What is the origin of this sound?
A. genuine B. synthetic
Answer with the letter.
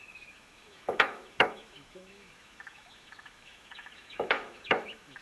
B